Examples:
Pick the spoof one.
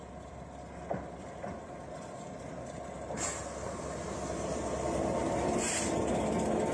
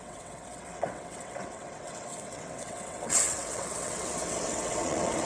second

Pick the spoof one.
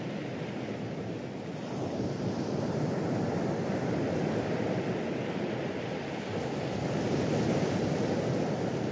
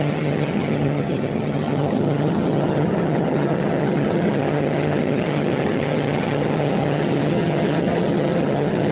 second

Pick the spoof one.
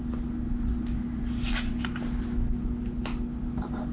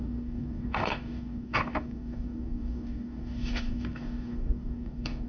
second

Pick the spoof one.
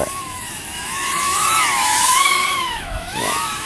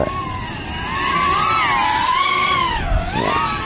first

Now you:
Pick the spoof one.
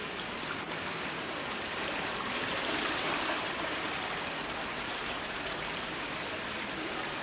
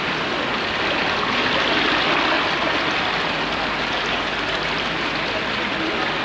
first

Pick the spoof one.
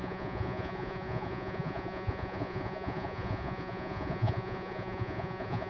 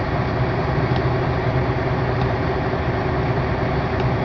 first